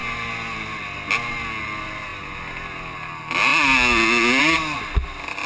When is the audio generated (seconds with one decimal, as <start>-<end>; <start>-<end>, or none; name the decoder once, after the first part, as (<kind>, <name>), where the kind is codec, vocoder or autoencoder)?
none